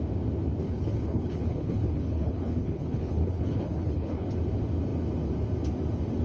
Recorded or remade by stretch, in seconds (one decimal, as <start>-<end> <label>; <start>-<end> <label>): 0.0-0.6 recorded; 0.6-4.3 remade; 4.3-6.2 recorded